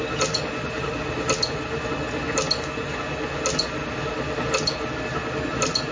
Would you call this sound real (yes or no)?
yes